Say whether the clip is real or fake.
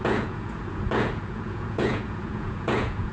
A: fake